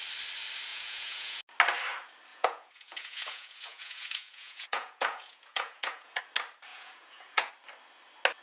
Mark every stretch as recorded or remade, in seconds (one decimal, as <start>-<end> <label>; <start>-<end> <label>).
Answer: 0.0-0.7 recorded; 0.7-1.4 remade; 1.4-2.3 recorded; 2.3-6.2 remade; 6.2-6.7 recorded; 6.7-7.5 remade; 7.5-8.4 recorded